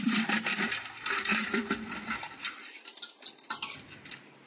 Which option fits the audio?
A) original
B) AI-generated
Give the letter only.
B